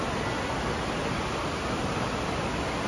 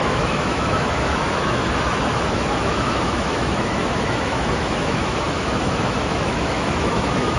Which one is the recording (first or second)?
first